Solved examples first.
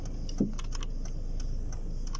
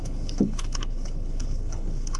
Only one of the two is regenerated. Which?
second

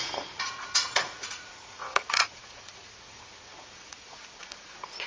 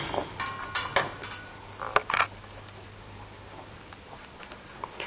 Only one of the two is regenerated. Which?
first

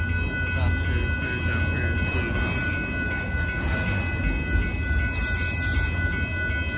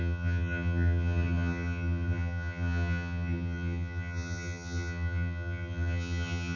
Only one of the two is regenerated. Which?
second